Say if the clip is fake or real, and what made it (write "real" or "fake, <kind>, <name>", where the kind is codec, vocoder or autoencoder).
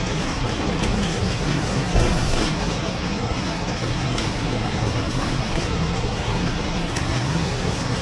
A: fake, codec, SNAC